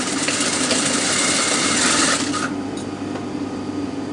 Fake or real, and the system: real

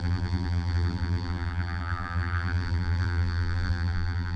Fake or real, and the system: fake, vocoder, BigVGAN v2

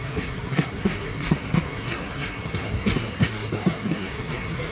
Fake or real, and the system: fake, codec, SNAC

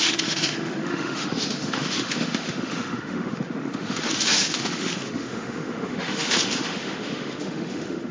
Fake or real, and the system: fake, autoencoder, DAC-VAE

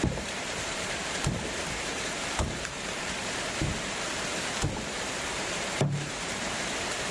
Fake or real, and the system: fake, vocoder, BigVGAN v2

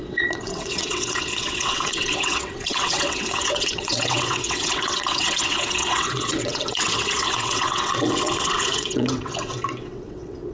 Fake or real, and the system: fake, vocoder, WaveNeXt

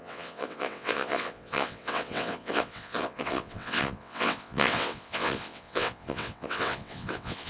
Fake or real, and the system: fake, vocoder, WaveNeXt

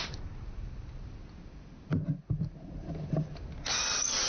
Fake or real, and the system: real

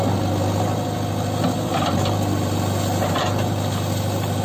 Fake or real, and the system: real